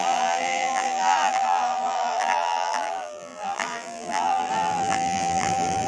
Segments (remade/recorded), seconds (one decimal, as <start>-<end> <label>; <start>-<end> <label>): 0.0-5.9 remade